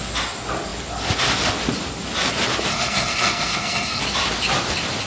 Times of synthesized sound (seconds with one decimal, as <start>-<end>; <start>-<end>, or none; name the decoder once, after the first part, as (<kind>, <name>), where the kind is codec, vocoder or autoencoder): 2.7-4.0 (codec, SNAC)